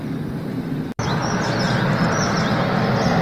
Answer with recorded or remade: recorded